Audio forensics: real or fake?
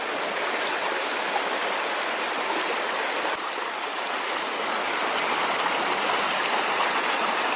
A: real